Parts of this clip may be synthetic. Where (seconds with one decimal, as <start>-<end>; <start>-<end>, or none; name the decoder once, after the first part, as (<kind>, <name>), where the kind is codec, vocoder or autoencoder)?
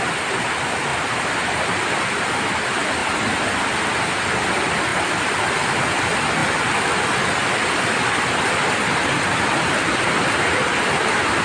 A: 0.9-2.3 (vocoder, BigVGAN v2); 3.0-3.5